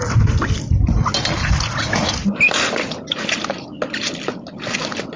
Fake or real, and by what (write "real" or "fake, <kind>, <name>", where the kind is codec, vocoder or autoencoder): real